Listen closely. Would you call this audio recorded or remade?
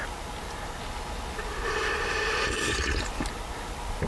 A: recorded